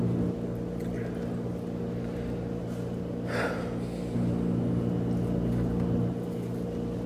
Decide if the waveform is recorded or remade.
recorded